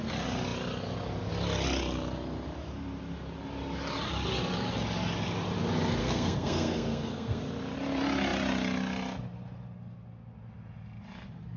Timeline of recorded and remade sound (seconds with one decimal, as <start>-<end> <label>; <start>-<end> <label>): 0.0-6.0 recorded; 6.0-7.4 remade; 7.4-11.6 recorded